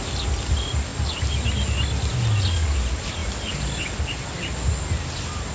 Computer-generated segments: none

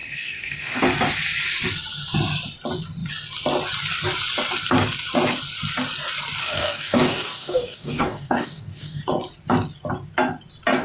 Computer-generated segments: 0.0-0.8 (codec, DAC); 6.4-9.0

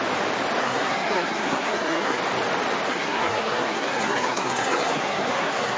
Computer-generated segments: 0.6-2.2 (codec, SNAC); 2.9-5.8

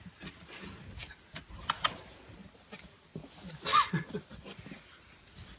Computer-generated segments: none

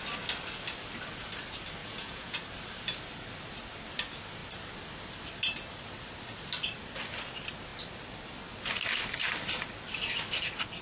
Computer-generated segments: 1.8-2.4 (vocoder, Vocos)